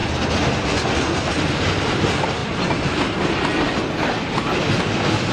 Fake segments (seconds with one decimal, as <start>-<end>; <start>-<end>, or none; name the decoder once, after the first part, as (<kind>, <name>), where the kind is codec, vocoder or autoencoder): 1.4-2.4 (vocoder, BigVGAN v2); 2.9-5.3